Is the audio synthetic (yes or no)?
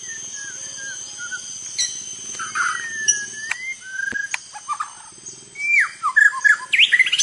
no